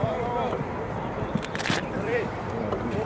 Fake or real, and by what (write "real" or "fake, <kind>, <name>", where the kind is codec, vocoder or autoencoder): fake, vocoder, BigVGAN v2